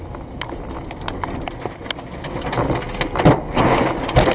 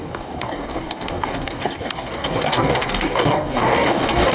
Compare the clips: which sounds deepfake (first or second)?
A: second